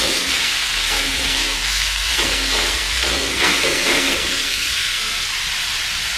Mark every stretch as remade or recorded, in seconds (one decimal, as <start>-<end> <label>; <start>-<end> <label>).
0.0-5.3 remade; 5.3-6.2 recorded

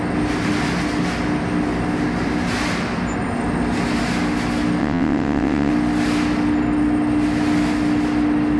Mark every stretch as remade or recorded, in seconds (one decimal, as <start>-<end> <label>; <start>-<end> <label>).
0.0-4.8 recorded; 4.8-5.7 remade; 5.7-8.6 recorded